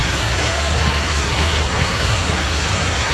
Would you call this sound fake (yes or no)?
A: yes